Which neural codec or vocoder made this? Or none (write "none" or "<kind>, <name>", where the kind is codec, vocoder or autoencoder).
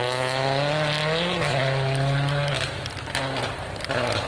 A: none